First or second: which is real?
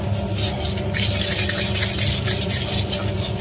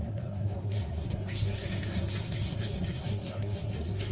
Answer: first